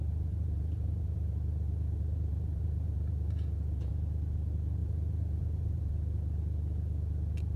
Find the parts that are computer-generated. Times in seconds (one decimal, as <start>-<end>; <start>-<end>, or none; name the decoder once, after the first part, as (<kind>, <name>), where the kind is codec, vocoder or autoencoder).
0.0-3.9 (vocoder, BigVGAN v2); 4.8-5.9